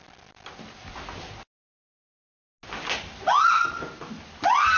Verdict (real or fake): real